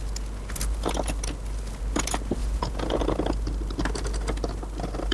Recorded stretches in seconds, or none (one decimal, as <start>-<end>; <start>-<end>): 0.0-2.4; 3.0-5.1